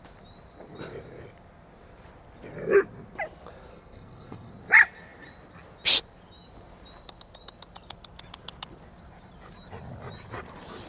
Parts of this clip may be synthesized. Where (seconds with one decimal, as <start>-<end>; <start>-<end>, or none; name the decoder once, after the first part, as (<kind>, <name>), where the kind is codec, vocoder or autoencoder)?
3.7-4.5 (codec, SNAC)